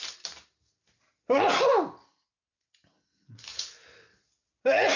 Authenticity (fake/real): real